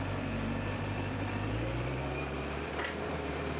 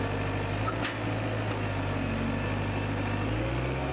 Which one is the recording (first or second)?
second